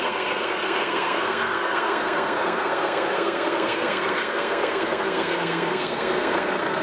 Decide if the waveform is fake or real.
fake